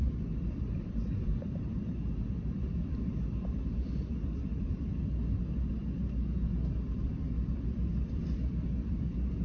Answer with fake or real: fake